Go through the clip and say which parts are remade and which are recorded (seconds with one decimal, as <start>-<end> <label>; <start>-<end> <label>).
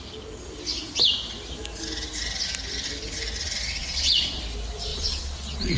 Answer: 0.0-3.8 recorded; 3.8-4.4 remade; 4.4-4.9 recorded; 4.9-5.8 remade